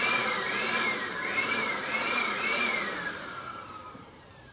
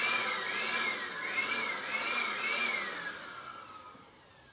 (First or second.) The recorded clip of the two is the second